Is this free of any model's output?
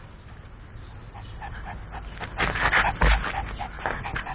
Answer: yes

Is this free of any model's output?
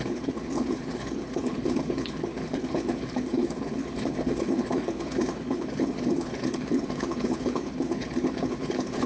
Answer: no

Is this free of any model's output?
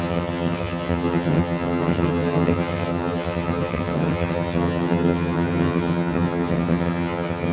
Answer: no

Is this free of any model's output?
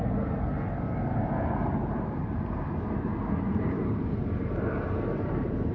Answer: no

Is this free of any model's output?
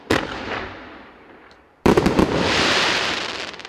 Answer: no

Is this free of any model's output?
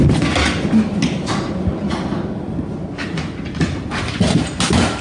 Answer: yes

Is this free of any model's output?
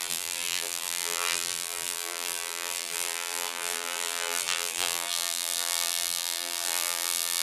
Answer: no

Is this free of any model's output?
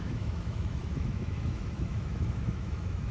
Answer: no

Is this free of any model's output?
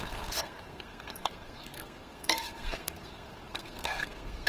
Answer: no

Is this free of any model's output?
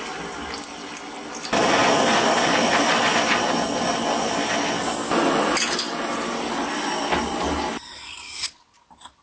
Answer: yes